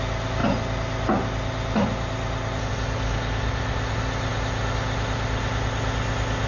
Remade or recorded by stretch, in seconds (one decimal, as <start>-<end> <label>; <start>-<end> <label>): 0.0-6.5 recorded